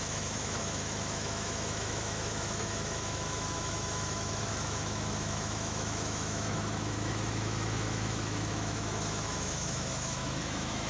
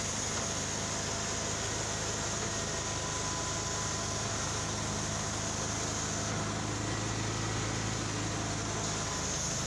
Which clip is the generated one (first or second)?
first